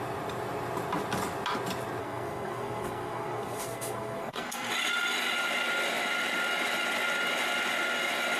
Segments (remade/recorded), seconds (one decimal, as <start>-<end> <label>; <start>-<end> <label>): 0.0-2.0 recorded; 2.0-4.7 remade; 4.7-8.4 recorded